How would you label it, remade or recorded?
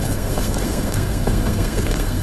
remade